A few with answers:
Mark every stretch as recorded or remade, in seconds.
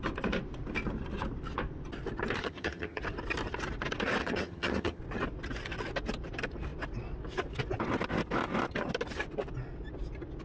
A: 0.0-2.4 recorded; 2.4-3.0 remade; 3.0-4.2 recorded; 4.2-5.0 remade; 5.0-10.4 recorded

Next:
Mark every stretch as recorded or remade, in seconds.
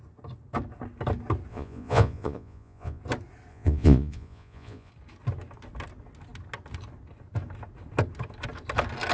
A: 0.0-1.5 recorded; 1.5-3.0 remade; 3.0-3.5 recorded; 3.5-4.9 remade; 4.9-9.1 recorded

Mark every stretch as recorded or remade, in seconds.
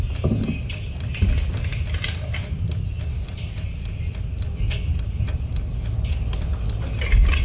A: 0.0-7.4 recorded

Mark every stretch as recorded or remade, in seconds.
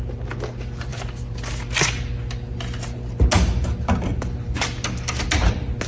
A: 0.0-5.9 recorded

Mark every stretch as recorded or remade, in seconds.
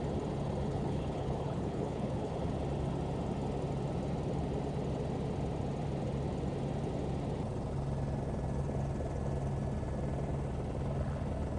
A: 0.0-0.7 recorded; 0.7-2.3 remade; 2.3-11.6 recorded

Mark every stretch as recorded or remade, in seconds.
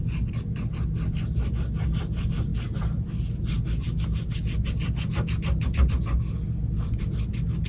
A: 0.0-7.7 recorded